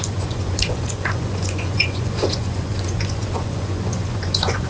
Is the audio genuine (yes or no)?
no